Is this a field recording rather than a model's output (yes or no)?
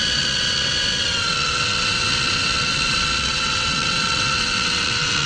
no